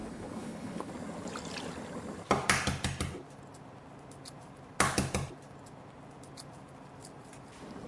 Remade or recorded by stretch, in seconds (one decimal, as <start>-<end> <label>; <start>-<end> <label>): 0.0-0.9 remade; 0.9-7.9 recorded